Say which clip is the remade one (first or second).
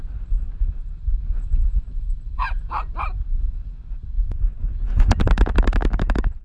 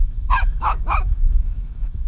second